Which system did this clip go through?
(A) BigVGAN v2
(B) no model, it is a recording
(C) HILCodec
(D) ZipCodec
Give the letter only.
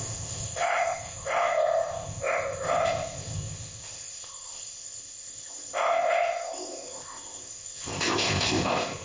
D